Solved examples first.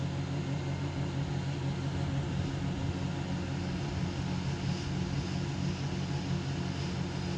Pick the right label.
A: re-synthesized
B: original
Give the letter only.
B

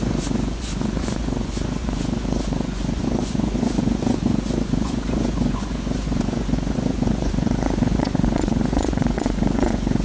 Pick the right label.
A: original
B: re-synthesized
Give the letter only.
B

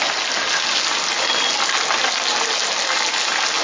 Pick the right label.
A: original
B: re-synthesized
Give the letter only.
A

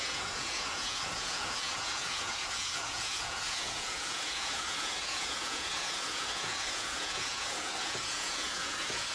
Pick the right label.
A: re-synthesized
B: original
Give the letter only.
A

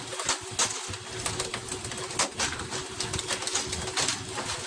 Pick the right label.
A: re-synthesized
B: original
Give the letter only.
B